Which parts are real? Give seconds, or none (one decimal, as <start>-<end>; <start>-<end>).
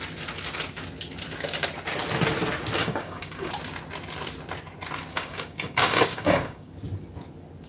0.0-2.8; 3.5-5.1; 6.7-7.7